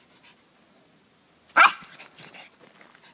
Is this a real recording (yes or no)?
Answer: yes